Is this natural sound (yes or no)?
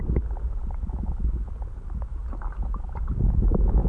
yes